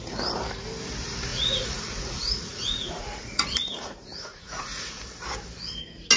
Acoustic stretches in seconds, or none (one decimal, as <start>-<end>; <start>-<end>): 0.0-1.3; 5.0-6.2